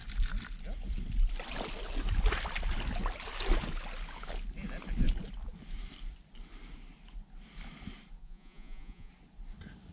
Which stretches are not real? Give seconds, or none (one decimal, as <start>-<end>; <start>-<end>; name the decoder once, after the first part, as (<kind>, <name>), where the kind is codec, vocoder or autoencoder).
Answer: 8.2-9.1 (vocoder, Vocos)